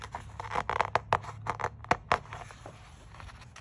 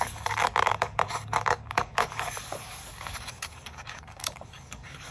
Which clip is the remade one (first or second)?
second